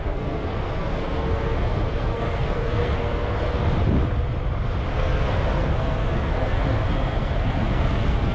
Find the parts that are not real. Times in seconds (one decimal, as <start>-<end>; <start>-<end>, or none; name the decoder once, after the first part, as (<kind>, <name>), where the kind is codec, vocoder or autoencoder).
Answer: 0.0-3.5 (codec, SNAC); 4.9-8.3